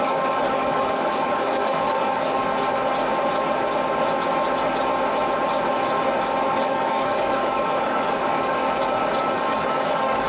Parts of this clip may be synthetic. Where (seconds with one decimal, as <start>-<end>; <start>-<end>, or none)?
0.0-2.4; 6.5-8.6; 9.2-10.3